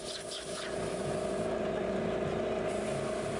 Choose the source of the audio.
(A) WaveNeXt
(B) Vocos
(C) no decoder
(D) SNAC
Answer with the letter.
C